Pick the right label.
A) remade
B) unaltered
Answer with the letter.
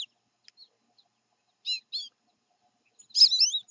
B